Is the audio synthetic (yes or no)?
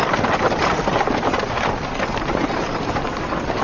no